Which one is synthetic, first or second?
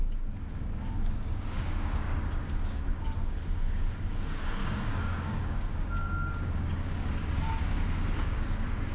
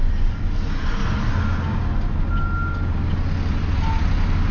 first